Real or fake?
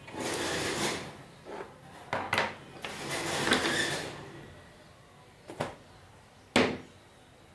real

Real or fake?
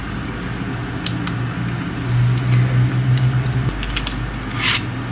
real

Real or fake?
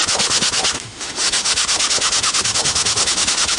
fake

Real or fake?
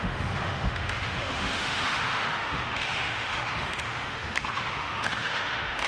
fake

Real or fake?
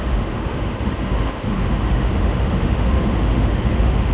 fake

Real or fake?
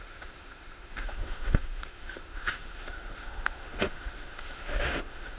fake